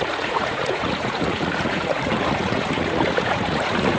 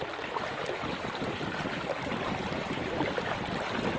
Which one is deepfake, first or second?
first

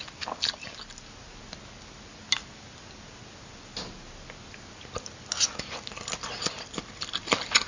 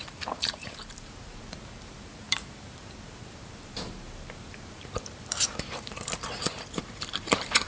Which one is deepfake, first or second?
second